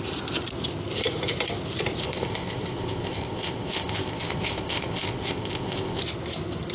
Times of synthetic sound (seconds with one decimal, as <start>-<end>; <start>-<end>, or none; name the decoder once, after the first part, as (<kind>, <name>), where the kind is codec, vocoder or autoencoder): 2.0-6.0 (codec, ZipCodec)